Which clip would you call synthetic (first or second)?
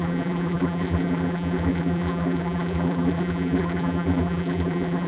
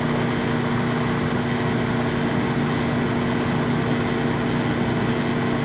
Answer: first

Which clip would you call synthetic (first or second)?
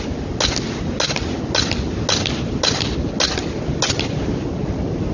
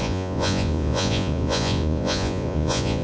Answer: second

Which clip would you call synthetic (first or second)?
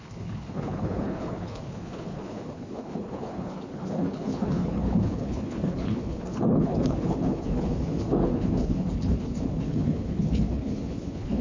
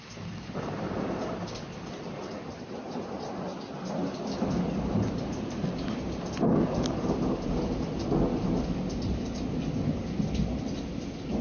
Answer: first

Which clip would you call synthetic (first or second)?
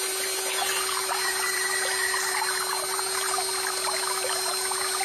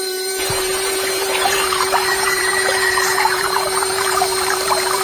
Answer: second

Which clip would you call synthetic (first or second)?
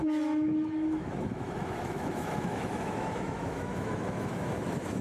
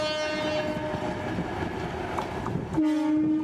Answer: first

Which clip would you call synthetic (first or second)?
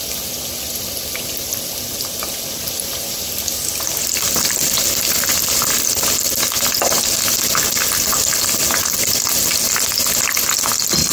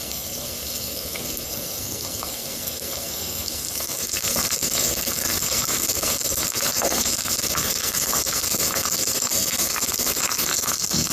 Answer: second